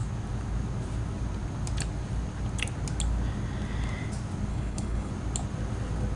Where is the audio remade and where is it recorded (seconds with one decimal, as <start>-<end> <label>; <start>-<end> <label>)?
0.0-4.5 recorded; 4.5-5.1 remade; 5.1-6.2 recorded